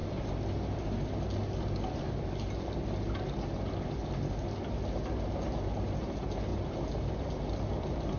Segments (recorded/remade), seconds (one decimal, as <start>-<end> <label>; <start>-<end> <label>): 0.0-8.2 recorded